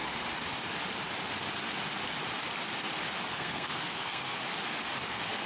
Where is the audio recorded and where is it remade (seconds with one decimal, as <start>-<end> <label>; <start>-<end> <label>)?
0.0-3.3 recorded; 3.3-4.4 remade; 4.4-5.0 recorded; 5.0-5.5 remade